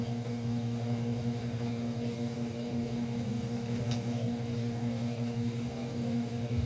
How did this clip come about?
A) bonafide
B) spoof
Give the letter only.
B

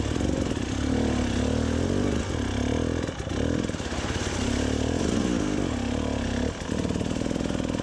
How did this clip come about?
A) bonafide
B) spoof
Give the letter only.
A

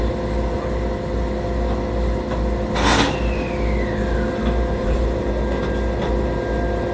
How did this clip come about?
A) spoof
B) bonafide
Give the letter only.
B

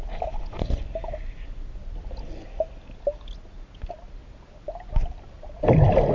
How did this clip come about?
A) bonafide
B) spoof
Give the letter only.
A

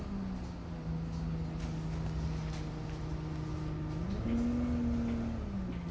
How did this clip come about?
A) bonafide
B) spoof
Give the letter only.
A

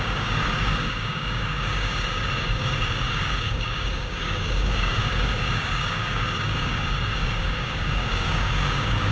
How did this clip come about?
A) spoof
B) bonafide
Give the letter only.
A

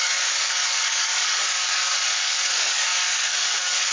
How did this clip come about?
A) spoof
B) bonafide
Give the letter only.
A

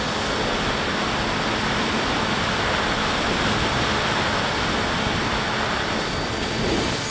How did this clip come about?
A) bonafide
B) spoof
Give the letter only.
A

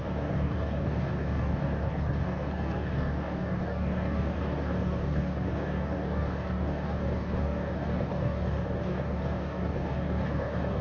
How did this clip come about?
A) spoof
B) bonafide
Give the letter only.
A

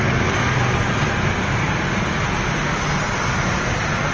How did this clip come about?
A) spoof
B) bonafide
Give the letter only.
B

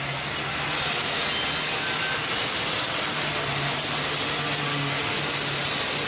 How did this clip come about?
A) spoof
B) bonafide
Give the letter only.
B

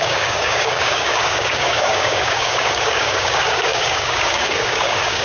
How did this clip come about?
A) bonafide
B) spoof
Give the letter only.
B